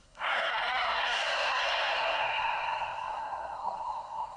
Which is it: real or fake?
fake